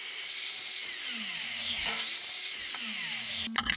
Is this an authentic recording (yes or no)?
yes